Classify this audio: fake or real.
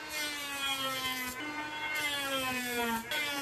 fake